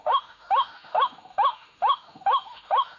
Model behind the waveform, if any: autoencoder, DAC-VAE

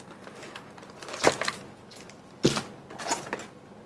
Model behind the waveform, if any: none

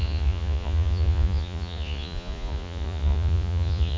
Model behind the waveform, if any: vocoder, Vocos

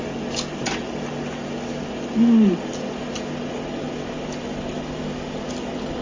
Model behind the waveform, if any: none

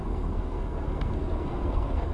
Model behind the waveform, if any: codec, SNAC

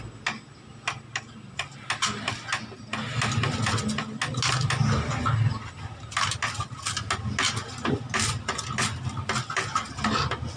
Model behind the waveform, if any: none